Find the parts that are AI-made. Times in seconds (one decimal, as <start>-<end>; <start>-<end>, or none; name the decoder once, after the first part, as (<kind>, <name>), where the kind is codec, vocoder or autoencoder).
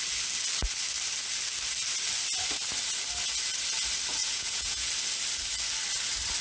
4.2-4.9 (vocoder, Vocos)